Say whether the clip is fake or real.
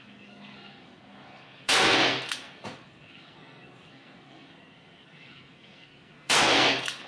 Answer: fake